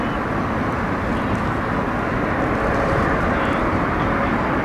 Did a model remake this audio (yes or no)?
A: yes